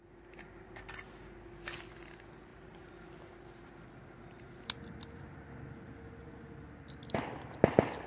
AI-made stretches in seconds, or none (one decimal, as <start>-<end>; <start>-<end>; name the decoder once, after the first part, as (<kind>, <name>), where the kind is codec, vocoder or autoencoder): none